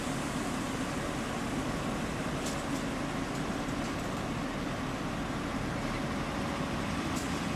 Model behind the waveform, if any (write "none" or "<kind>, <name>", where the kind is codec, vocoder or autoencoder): none